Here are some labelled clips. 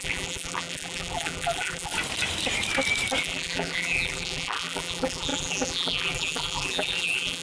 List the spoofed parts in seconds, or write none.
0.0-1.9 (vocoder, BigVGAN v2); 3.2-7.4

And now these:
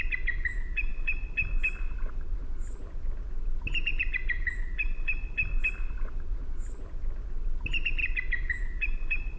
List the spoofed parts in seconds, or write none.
none

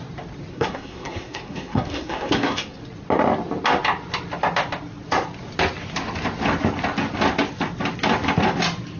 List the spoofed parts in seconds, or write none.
0.5-2.8 (codec, SNAC)